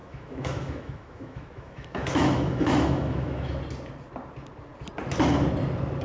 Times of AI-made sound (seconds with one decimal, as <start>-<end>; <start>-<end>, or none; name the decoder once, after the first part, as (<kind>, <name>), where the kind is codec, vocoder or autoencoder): 0.0-3.6 (autoencoder, DAC-VAE)